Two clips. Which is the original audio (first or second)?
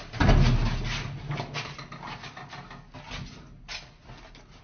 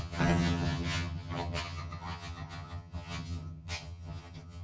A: first